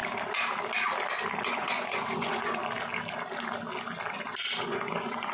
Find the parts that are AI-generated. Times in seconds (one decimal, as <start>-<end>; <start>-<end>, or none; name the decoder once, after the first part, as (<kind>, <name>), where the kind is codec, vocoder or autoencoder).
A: 1.5-2.6 (vocoder, Vocos); 4.6-5.3

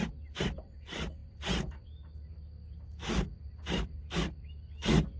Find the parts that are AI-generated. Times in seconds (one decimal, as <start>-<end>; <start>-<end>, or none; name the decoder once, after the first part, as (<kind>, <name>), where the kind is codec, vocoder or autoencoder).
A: none